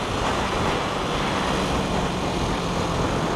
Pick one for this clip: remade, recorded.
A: recorded